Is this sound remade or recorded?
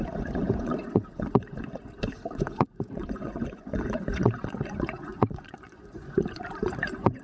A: remade